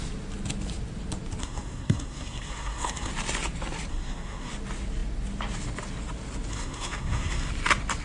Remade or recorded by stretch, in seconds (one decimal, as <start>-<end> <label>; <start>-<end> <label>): 0.0-1.4 recorded; 1.4-3.1 remade; 3.1-3.9 recorded; 3.9-4.5 remade; 4.5-6.5 recorded; 6.5-7.5 remade; 7.5-8.0 recorded